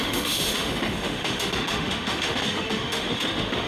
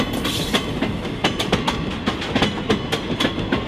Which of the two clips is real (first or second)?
second